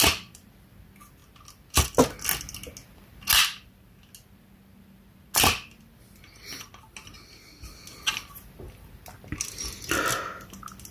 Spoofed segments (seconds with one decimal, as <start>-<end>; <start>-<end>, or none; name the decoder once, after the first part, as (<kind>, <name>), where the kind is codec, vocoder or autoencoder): none